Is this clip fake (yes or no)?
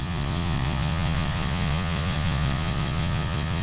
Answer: yes